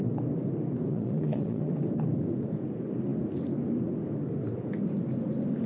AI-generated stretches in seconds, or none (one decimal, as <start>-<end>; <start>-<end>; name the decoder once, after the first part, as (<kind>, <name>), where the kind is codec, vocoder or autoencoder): 0.9-1.7 (vocoder, Vocos)